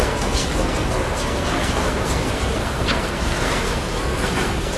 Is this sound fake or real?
fake